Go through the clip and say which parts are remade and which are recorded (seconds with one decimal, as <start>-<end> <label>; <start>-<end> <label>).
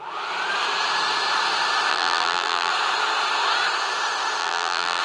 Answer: 0.0-1.9 recorded; 1.9-2.7 remade; 2.7-4.4 recorded; 4.4-5.0 remade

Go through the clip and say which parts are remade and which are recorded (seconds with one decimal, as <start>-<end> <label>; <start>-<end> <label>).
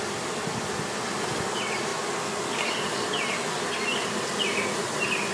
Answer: 0.0-5.3 recorded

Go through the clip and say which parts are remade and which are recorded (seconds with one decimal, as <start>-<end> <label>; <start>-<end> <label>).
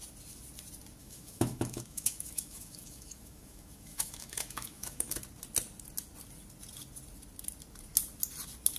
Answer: 0.0-1.0 recorded; 1.0-5.2 remade; 5.2-8.8 recorded